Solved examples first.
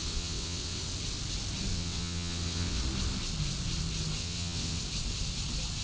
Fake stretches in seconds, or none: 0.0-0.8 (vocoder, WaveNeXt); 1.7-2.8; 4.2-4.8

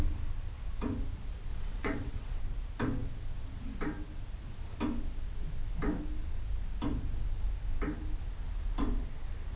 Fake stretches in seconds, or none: 1.5-2.4 (vocoder, WaveNeXt)

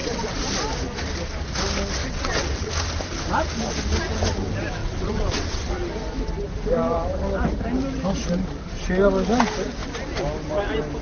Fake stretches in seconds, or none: 0.0-0.5 (vocoder, WaveNeXt); 2.0-2.7; 4.8-5.7